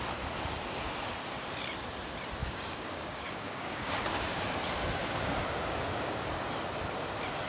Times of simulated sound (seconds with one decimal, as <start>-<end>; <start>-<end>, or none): 2.4-4.4; 5.0-6.3